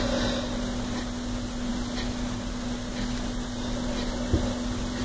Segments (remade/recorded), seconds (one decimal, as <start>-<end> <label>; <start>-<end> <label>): 0.0-5.0 recorded